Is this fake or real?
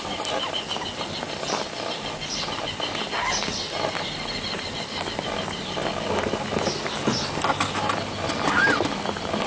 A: real